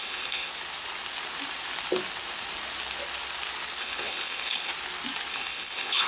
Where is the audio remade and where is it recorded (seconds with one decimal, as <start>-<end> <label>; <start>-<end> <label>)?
0.0-0.5 remade; 0.5-3.8 recorded; 3.8-4.7 remade; 4.7-5.3 recorded; 5.3-6.1 remade